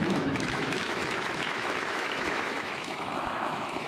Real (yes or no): no